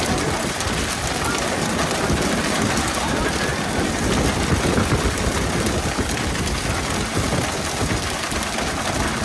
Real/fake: real